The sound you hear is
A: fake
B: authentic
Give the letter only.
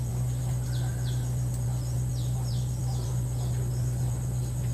B